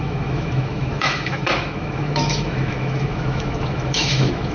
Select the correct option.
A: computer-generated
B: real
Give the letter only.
A